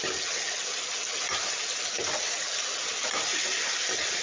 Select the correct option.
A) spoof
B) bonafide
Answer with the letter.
B